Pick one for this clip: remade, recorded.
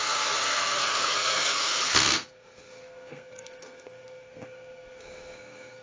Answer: remade